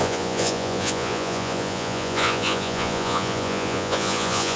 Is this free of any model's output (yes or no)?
no